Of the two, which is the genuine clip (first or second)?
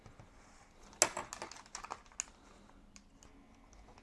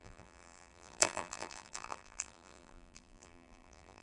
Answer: first